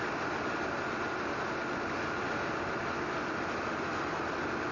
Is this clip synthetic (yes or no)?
no